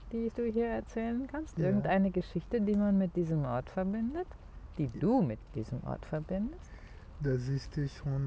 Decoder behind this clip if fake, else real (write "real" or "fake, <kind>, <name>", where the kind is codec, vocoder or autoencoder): real